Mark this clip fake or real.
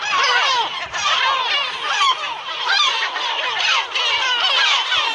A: real